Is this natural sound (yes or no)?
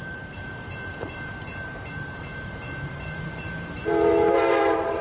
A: no